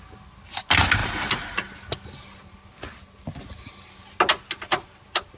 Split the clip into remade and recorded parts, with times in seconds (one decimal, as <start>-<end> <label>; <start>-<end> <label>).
0.0-5.4 recorded